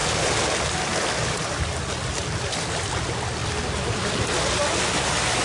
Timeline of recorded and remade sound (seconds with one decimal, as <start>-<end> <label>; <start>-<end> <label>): 0.0-5.4 recorded